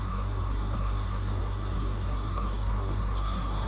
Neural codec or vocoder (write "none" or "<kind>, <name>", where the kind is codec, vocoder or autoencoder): codec, SNAC